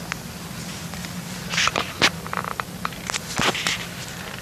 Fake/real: real